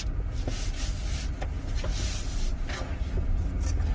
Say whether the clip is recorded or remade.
recorded